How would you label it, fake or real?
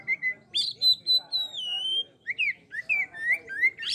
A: real